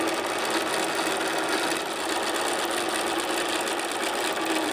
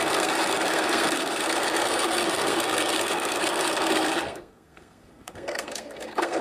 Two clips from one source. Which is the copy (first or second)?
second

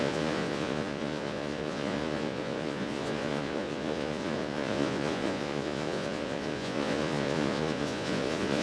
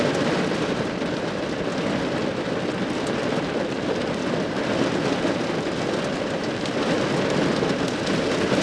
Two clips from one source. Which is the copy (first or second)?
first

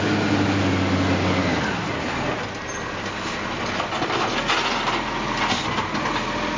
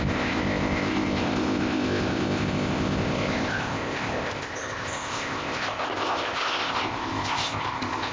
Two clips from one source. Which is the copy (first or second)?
second